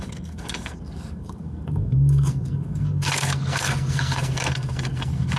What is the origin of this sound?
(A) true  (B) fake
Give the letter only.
B